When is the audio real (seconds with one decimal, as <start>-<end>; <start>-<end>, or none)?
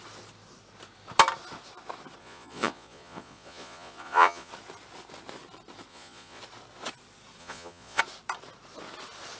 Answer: 0.0-2.2; 4.5-5.9; 6.4-7.4; 8.0-9.4